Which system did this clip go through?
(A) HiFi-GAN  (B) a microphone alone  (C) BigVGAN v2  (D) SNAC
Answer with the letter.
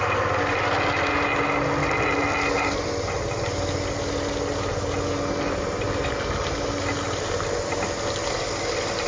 B